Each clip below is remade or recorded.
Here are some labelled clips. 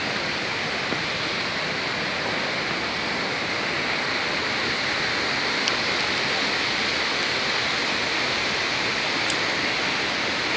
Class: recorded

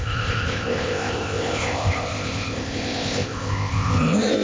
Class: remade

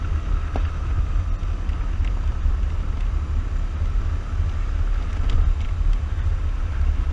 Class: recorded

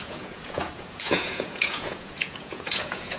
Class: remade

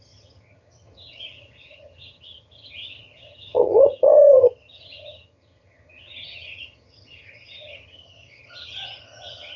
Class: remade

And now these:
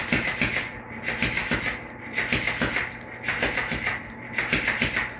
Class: recorded